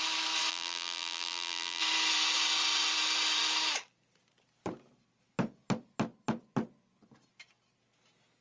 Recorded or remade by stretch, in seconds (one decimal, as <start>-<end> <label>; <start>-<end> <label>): 0.0-0.5 recorded; 0.5-1.8 remade; 1.8-8.4 recorded